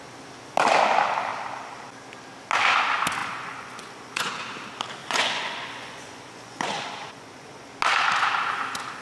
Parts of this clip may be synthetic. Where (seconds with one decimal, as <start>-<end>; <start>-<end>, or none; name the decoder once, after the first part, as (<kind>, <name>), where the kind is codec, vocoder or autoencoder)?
3.2-4.3 (vocoder, Vocos); 5.0-7.7